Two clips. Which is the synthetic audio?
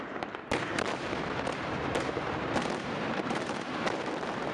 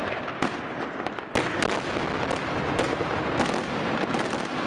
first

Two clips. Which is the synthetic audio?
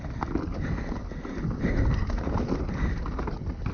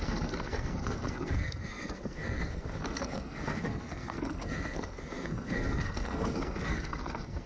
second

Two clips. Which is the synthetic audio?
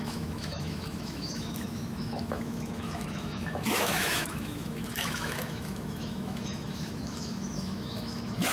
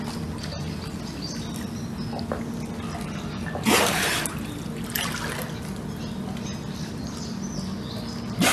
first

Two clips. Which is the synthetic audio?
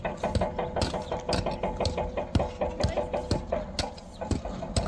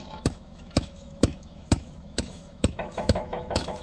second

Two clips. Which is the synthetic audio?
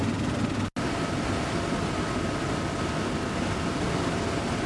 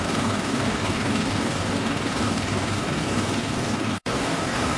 second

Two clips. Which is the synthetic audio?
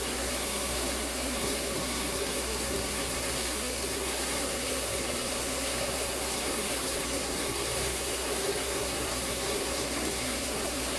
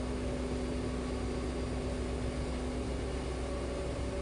first